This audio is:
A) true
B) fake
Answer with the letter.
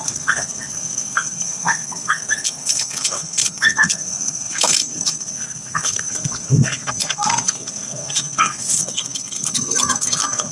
B